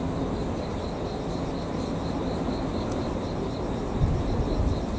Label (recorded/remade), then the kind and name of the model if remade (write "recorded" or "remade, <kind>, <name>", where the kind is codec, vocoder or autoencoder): recorded